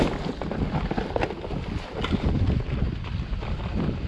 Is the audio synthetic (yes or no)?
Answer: no